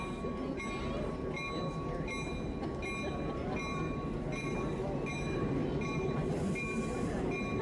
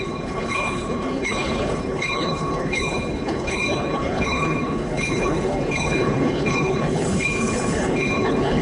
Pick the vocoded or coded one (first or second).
second